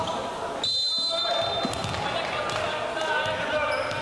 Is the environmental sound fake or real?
real